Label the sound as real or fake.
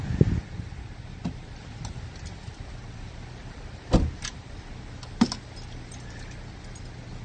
real